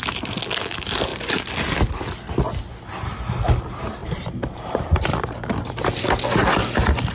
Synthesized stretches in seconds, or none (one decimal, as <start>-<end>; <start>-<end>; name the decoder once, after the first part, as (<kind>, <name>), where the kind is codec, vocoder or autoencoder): 4.0-5.7 (vocoder, BigVGAN v2)